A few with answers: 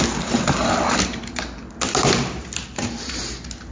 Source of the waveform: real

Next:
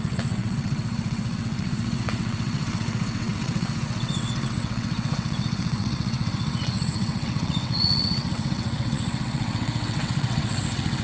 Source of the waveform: fake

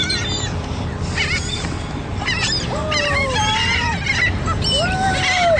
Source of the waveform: real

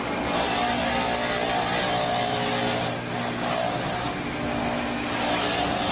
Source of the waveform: real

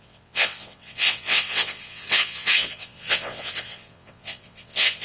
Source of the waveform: fake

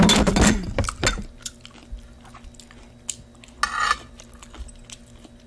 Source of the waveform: real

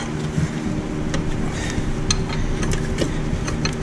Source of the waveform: real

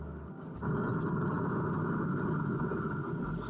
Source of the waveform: real